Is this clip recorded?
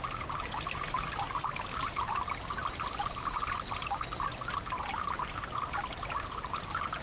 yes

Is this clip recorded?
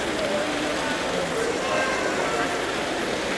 yes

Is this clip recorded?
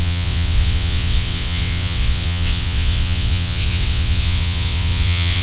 no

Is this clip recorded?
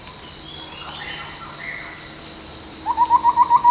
yes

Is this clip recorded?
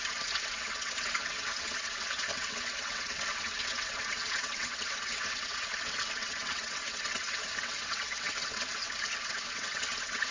no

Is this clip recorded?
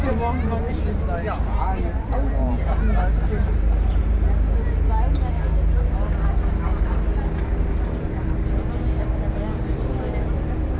yes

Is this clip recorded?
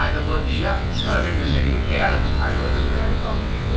no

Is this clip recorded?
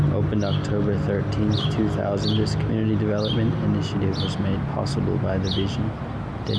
yes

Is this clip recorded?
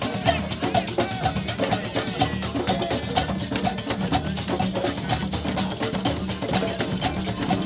yes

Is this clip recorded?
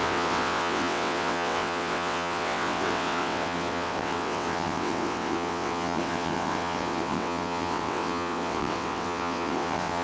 no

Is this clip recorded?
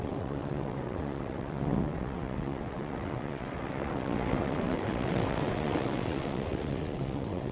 no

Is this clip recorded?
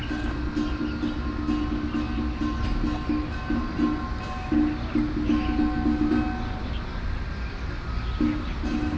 yes